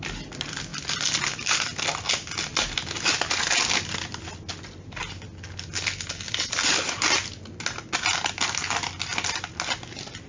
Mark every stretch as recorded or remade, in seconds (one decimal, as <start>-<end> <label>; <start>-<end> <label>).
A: 0.0-10.3 recorded